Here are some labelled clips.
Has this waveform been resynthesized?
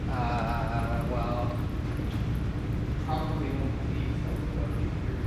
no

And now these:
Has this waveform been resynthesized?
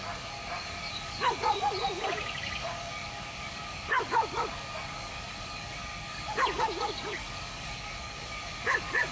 yes